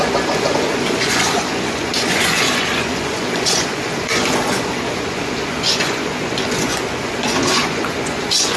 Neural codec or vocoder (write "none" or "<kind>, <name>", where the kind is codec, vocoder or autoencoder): vocoder, Vocos